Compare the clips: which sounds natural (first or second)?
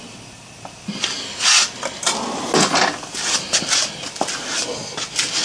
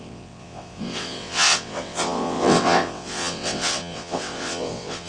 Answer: first